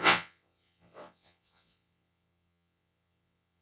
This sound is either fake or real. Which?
fake